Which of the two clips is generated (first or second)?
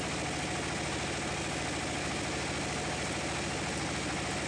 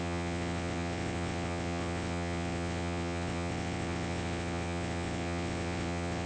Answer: second